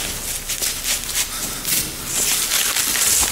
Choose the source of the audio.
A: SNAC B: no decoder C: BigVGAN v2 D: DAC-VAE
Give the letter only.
B